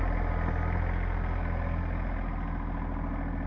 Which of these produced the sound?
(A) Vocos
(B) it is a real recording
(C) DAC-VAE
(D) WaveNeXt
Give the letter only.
B